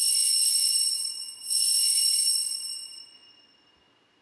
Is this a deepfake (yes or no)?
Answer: no